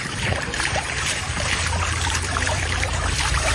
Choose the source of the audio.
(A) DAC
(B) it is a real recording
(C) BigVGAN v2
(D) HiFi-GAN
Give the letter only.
C